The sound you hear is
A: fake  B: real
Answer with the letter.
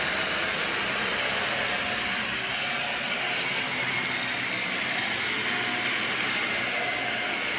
B